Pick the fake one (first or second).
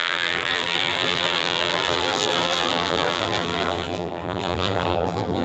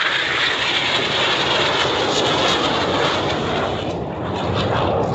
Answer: first